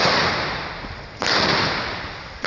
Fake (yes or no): no